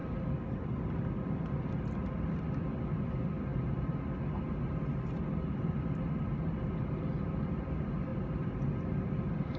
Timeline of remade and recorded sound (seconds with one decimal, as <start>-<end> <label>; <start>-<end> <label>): 0.0-9.6 recorded